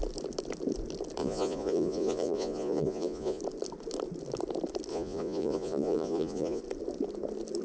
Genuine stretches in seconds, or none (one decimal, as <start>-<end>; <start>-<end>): 0.0-1.2; 3.4-4.9; 6.6-7.6

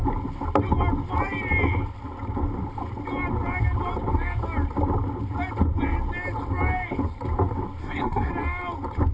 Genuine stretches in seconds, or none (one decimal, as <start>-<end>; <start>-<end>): 0.0-7.8; 8.3-9.1

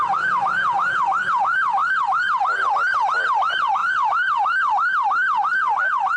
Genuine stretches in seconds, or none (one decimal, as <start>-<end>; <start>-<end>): 3.8-5.8

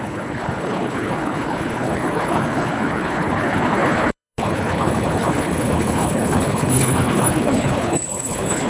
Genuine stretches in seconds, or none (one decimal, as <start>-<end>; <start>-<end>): none

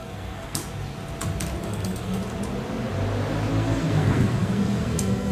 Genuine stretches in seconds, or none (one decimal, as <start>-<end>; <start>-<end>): 0.6-1.6; 2.2-3.5

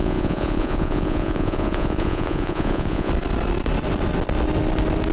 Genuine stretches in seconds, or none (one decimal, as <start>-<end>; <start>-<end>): 3.1-5.1